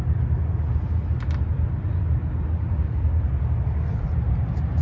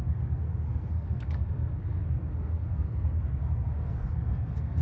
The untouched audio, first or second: first